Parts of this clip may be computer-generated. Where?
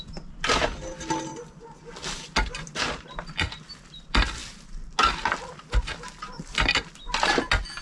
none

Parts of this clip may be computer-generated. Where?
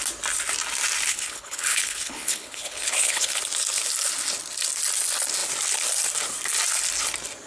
1.1-3.4 (codec, HILCodec)